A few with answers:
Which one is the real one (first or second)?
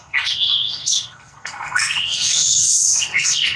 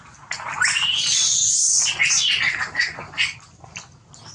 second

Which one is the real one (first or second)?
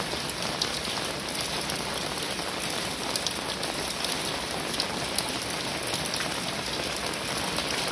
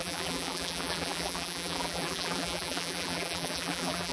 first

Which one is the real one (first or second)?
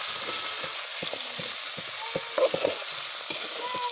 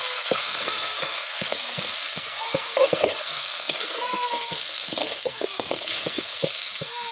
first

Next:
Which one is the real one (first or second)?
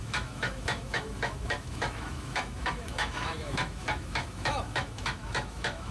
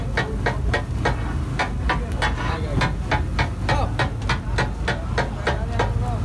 second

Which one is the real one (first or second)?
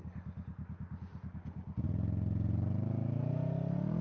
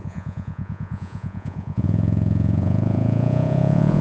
first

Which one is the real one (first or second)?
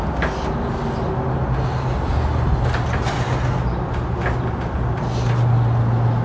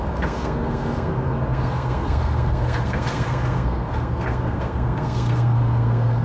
first